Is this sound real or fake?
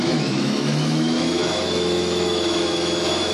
fake